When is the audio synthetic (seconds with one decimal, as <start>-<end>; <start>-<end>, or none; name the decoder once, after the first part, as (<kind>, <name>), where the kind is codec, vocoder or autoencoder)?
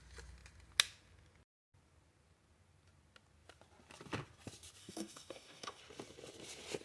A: 4.8-5.8 (codec, DAC)